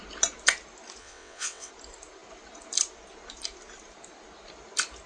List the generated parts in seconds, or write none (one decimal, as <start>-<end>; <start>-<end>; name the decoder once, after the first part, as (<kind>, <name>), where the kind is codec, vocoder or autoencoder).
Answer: 1.0-1.7 (vocoder, WaveNeXt)